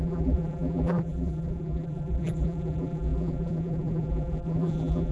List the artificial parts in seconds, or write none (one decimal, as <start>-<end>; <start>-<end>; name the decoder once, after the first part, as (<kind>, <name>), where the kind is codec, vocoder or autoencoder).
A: 0.0-5.1 (vocoder, BigVGAN v2)